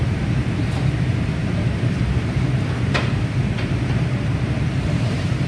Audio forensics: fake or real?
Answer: fake